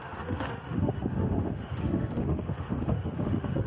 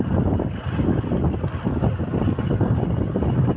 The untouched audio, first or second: second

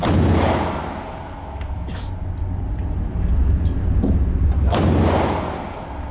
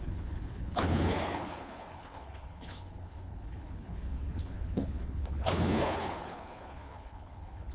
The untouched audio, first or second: first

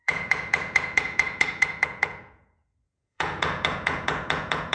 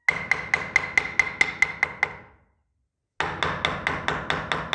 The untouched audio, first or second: second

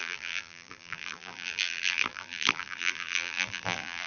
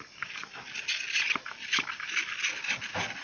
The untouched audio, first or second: second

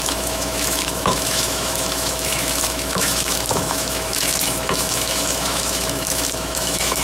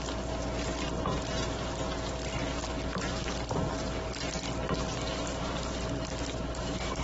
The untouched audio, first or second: second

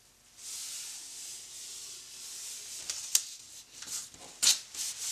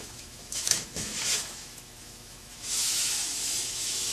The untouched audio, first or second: first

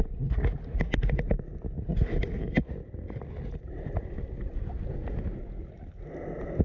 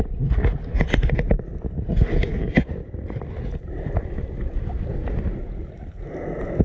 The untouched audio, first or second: first